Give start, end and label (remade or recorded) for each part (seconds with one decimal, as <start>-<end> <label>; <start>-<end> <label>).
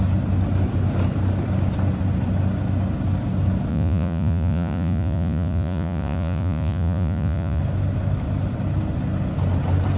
0.0-3.7 recorded; 3.7-7.6 remade; 7.6-10.0 recorded